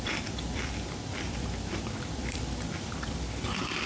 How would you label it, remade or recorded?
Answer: remade